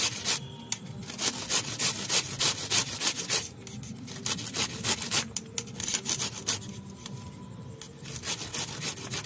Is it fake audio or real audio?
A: real